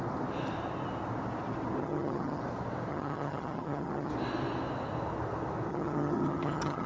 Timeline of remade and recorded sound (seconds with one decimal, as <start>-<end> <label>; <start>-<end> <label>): 0.0-1.8 recorded; 1.8-2.4 remade; 2.4-2.9 recorded; 2.9-4.1 remade; 4.1-5.7 recorded; 5.7-6.9 remade